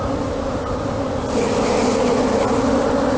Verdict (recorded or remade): recorded